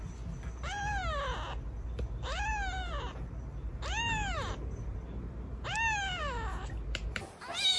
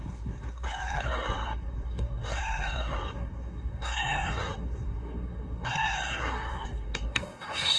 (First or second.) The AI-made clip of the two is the second